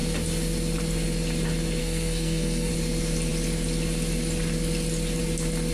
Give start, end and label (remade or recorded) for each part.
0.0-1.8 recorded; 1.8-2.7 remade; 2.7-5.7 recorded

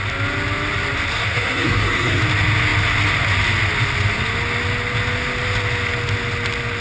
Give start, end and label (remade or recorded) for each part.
0.0-1.1 recorded; 1.1-2.2 remade; 2.2-6.8 recorded

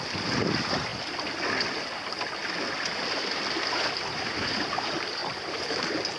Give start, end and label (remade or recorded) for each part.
0.0-5.2 recorded; 5.2-6.2 remade

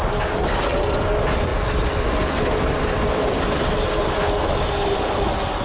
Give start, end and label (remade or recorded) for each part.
0.0-5.6 recorded

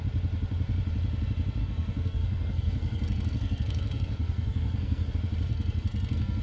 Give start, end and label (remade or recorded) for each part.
0.0-1.6 recorded; 1.6-5.1 remade; 5.1-5.5 recorded; 5.5-6.4 remade

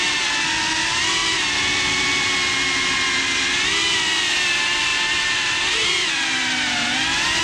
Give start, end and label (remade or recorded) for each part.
0.0-4.9 recorded; 4.9-6.1 remade; 6.1-7.4 recorded